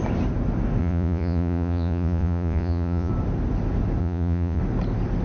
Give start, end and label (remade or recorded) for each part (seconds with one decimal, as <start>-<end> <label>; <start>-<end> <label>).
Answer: 0.0-0.8 recorded; 0.8-3.1 remade; 3.1-4.0 recorded; 4.0-4.6 remade; 4.6-5.2 recorded